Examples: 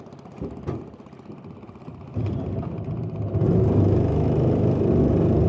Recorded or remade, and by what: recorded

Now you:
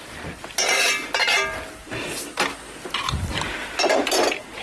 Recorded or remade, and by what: recorded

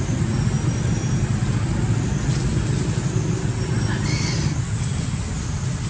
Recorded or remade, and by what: recorded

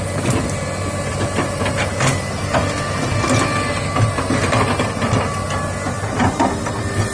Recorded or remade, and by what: recorded